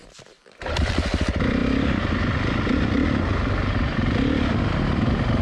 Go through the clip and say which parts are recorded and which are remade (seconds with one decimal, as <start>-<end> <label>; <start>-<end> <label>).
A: 0.0-5.4 remade